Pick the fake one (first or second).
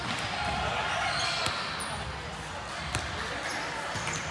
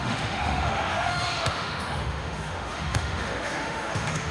second